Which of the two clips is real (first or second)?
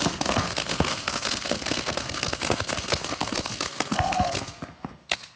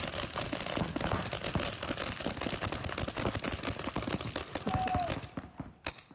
second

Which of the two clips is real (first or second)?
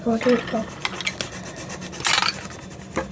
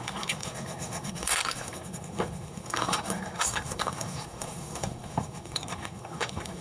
first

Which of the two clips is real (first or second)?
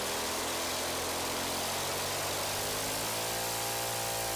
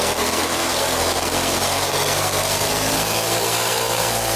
first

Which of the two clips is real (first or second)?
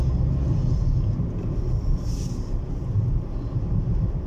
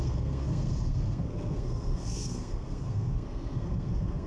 first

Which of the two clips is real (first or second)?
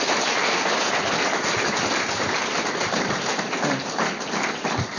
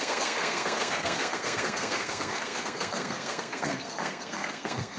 first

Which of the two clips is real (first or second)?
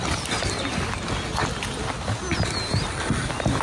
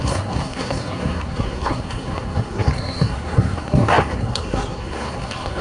first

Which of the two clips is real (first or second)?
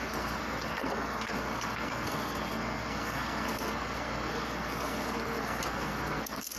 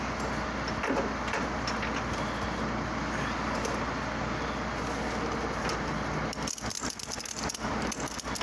second